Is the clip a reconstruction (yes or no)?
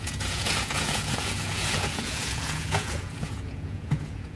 yes